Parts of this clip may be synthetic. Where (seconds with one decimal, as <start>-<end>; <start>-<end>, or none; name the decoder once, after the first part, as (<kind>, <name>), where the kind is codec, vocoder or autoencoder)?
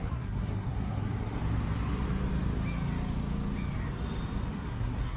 0.0-1.4 (codec, SNAC); 4.5-5.2